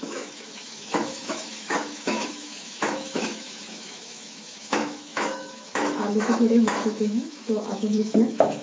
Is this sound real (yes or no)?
no